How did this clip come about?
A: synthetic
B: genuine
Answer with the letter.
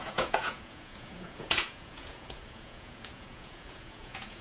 A